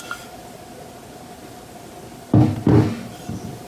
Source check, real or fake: real